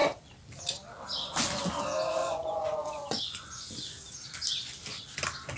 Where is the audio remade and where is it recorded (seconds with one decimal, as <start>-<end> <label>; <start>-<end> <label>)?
0.0-2.2 recorded; 2.2-3.7 remade; 3.7-5.6 recorded